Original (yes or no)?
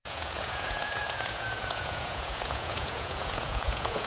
no